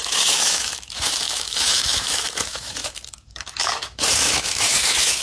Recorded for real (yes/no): no